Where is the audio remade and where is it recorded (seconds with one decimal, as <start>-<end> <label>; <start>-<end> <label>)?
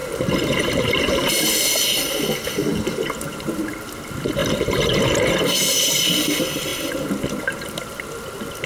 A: 0.0-3.6 remade; 3.6-4.4 recorded; 4.4-5.3 remade; 5.3-8.7 recorded